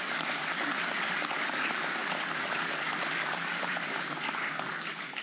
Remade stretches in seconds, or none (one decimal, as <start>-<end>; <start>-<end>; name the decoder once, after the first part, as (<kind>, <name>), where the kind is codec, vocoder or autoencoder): 0.0-5.2 (codec, DAC)